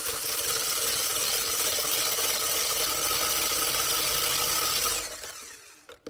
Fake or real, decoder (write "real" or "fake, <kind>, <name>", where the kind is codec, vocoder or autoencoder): real